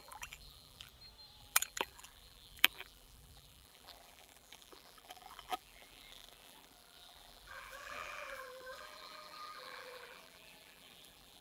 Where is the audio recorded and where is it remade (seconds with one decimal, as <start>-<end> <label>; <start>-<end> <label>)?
0.0-0.9 remade; 0.9-1.4 recorded; 1.4-11.4 remade